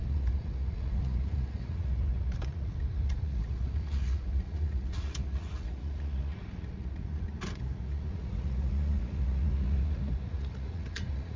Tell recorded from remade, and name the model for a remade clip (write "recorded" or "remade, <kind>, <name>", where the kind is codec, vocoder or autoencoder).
remade, vocoder, Vocos